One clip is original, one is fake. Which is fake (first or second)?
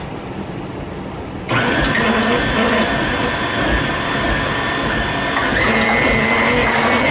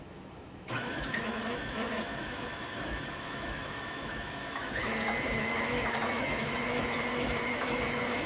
second